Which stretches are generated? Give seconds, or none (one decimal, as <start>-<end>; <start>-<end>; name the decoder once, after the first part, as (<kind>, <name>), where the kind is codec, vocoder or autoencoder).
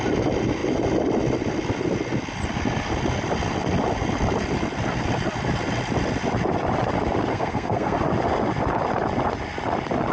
7.3-8.0 (codec, SNAC)